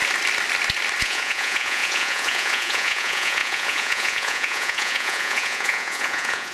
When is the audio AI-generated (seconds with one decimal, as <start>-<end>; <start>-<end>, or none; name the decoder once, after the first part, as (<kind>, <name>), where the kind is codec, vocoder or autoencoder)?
1.0-6.5 (vocoder, Vocos)